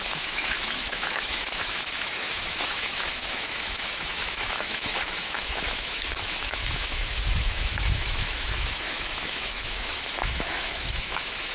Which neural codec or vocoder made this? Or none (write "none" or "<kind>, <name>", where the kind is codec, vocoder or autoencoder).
autoencoder, DAC-VAE